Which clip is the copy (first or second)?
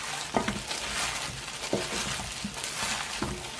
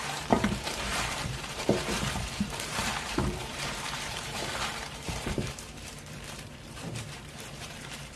second